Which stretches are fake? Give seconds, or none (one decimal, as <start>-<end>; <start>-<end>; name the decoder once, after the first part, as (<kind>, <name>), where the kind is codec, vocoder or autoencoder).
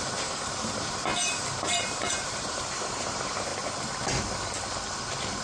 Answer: 0.0-3.5 (vocoder, BigVGAN v2)